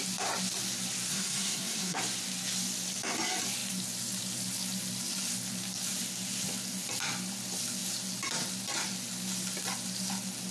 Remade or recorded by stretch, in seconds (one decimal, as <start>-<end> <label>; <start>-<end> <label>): 0.0-1.1 recorded; 1.1-2.0 remade; 2.0-10.5 recorded